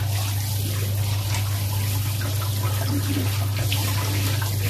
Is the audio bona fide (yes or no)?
yes